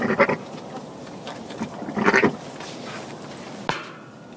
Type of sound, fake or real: real